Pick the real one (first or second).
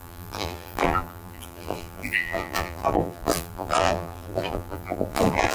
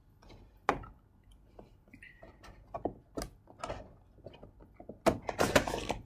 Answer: second